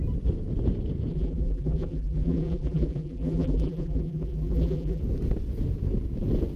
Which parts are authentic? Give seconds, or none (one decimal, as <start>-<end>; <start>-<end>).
0.0-1.1; 5.0-6.6